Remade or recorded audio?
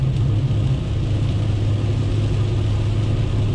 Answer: recorded